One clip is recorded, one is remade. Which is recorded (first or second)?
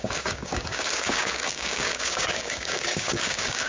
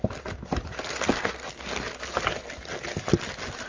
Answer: second